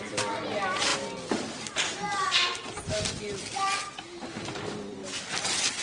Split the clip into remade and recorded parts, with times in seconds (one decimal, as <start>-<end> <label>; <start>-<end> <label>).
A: 0.0-0.9 remade; 0.9-4.4 recorded; 4.4-5.0 remade; 5.0-5.8 recorded